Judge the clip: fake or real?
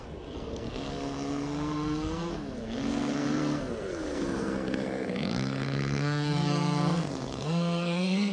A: fake